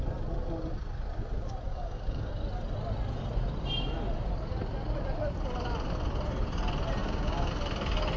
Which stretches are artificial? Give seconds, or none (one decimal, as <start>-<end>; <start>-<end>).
1.7-2.3; 7.0-7.5